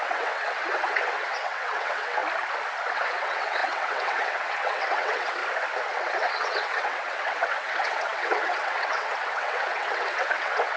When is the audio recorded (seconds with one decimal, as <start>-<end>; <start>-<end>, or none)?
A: 2.2-2.9; 5.4-5.9